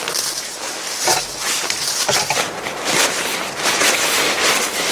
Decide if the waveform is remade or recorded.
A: recorded